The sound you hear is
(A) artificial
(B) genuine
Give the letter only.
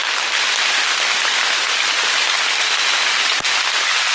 B